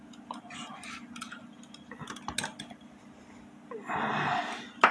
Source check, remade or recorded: recorded